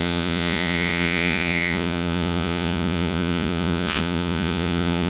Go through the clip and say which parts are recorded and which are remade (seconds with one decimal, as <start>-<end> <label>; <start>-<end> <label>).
0.0-5.1 remade